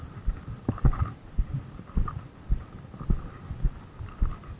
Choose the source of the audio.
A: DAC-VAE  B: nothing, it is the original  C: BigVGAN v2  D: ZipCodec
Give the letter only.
B